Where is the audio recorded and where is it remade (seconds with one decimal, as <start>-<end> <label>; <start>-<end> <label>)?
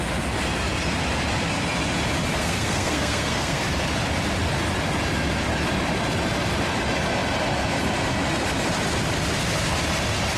0.0-2.4 recorded; 2.4-3.6 remade; 3.6-10.4 recorded